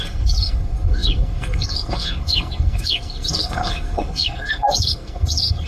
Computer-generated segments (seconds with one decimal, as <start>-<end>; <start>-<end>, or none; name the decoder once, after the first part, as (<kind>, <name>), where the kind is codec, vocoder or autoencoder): 0.0-5.7 (codec, SNAC)